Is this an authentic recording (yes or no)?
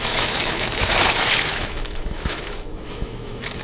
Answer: no